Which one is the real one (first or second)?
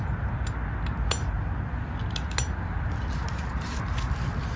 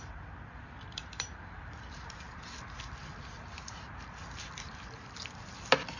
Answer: first